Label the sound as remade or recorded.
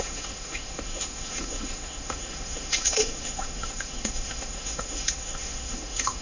remade